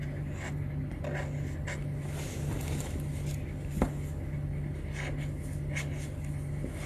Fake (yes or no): no